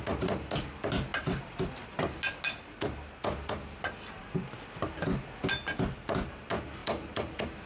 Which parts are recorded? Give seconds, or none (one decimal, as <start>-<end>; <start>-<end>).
0.0-7.7